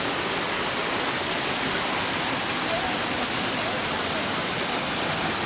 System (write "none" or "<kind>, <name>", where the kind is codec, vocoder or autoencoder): none